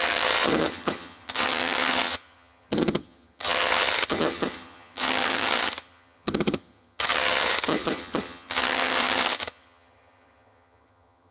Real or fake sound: fake